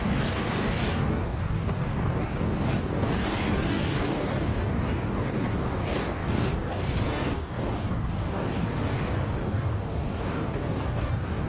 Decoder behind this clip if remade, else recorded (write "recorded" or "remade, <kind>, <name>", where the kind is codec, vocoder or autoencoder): remade, codec, DAC